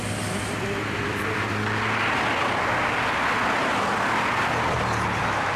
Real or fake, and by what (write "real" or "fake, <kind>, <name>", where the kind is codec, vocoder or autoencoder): real